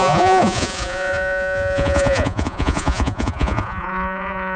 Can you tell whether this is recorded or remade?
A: remade